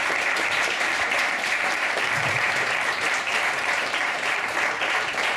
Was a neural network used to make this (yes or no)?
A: yes